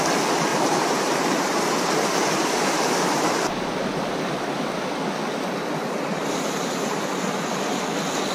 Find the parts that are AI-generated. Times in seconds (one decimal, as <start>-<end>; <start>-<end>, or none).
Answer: 0.5-4.8; 6.1-7.1